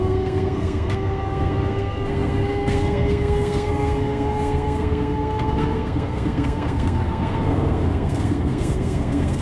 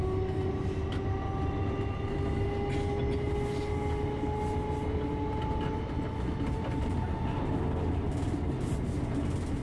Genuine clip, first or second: second